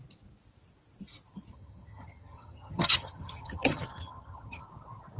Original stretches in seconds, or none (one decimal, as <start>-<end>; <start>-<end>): 0.0-1.5; 4.6-5.2